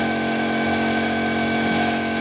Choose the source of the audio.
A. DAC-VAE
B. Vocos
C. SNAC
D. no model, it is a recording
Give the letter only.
A